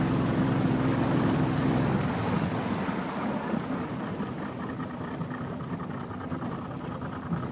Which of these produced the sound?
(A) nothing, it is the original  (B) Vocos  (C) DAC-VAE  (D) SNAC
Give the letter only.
A